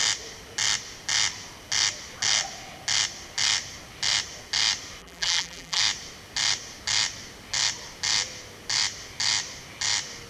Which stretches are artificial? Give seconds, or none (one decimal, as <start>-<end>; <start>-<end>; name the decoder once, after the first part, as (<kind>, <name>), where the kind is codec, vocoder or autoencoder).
5.0-5.8 (vocoder, BigVGAN v2)